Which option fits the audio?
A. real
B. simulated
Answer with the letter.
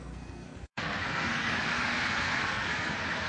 B